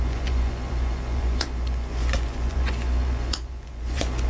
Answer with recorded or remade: remade